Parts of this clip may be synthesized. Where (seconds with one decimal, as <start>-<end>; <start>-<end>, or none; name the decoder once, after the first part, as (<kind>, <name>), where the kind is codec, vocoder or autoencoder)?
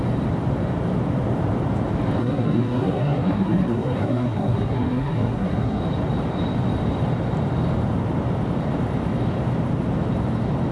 2.2-5.8 (codec, SNAC)